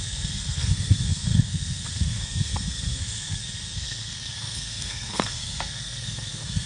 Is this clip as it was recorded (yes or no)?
no